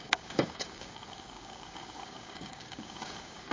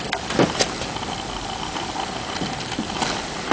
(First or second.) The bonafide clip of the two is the second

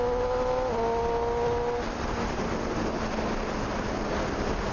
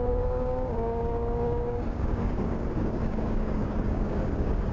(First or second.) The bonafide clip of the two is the first